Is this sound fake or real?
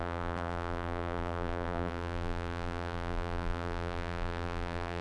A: fake